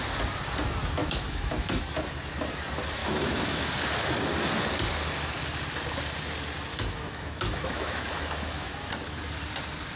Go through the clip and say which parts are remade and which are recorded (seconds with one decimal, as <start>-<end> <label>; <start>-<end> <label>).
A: 0.0-1.0 recorded; 1.0-1.8 remade; 1.8-3.0 recorded; 3.0-3.7 remade; 3.7-6.7 recorded; 6.7-8.9 remade; 8.9-10.0 recorded